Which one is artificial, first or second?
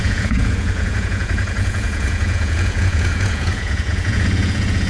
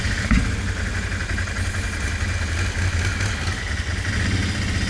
first